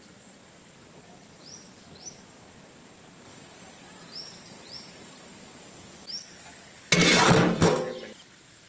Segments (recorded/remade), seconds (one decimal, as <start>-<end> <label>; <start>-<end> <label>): 0.0-0.8 recorded; 0.8-5.5 remade; 5.5-8.7 recorded